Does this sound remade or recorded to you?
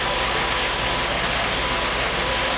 recorded